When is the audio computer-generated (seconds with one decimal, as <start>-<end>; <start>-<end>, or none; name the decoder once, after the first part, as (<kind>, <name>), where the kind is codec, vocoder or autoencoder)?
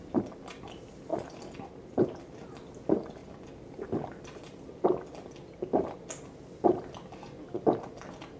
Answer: none